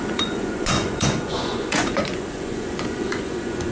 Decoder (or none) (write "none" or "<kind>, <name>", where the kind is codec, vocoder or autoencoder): vocoder, Vocos